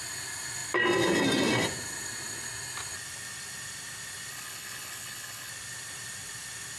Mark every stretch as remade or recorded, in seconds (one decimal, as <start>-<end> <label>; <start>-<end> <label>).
0.0-4.3 recorded; 4.3-5.5 remade; 5.5-6.8 recorded